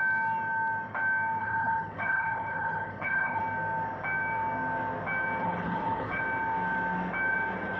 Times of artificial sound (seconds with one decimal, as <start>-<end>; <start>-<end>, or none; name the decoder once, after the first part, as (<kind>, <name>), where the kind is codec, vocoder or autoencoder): 1.4-3.4 (codec, HILCodec); 5.4-6.2